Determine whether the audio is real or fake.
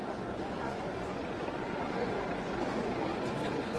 fake